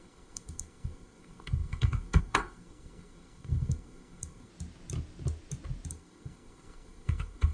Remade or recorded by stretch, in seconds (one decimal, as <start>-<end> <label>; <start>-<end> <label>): 0.0-4.5 remade; 4.5-5.9 recorded; 5.9-7.5 remade